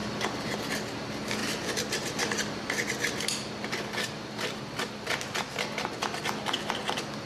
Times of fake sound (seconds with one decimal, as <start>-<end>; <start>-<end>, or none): none